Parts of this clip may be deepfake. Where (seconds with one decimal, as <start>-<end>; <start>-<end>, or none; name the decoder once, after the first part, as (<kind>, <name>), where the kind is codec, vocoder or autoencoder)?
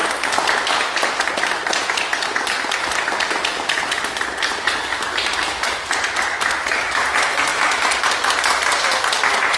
4.9-7.1 (vocoder, BigVGAN v2)